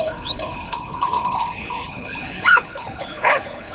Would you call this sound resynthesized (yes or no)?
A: yes